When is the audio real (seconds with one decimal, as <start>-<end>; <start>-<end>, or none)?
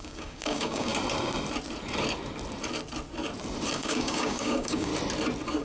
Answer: 0.9-3.7; 4.9-5.6